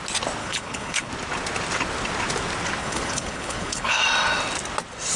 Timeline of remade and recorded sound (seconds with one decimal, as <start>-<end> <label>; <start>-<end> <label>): 0.0-0.4 recorded; 0.4-1.1 remade; 1.1-2.8 recorded; 2.8-4.0 remade; 4.0-5.2 recorded